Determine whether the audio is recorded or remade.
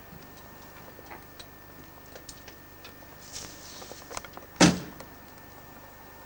recorded